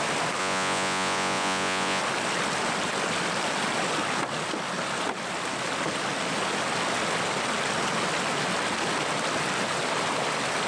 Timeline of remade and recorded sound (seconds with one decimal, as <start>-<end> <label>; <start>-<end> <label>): 0.0-0.4 recorded; 0.4-2.0 remade; 2.0-10.7 recorded